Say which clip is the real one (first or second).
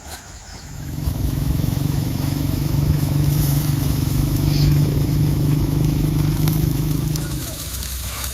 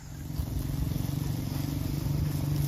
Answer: second